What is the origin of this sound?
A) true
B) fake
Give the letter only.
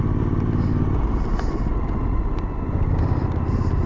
A